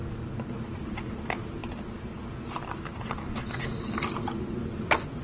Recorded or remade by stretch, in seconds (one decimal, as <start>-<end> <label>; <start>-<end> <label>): 0.0-5.2 recorded